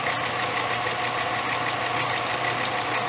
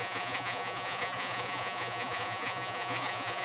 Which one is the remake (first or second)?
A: second